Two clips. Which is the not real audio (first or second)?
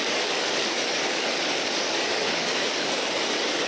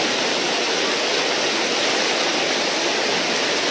first